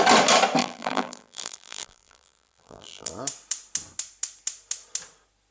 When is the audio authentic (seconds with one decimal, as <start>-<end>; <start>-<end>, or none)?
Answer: 0.0-0.6; 3.1-5.5